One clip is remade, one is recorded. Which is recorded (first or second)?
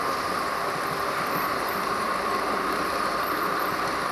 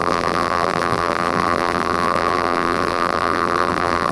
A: first